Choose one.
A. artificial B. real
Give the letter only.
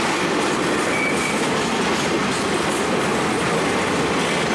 B